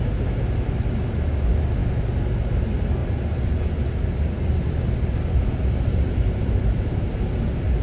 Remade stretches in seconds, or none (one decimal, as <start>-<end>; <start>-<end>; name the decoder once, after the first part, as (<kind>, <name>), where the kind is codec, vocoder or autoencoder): none